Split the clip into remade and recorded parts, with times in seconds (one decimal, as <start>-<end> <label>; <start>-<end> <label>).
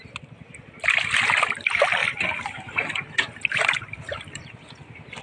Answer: 0.0-5.2 remade